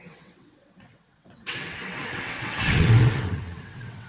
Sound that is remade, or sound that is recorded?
remade